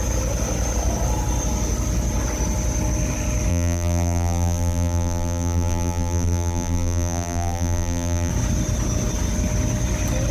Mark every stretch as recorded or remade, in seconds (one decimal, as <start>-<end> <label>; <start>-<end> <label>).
0.0-3.5 recorded; 3.5-8.3 remade; 8.3-10.3 recorded